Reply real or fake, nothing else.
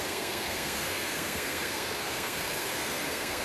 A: fake